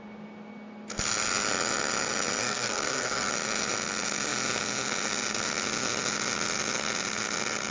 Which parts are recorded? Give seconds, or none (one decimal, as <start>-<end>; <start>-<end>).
0.0-2.4; 3.3-7.7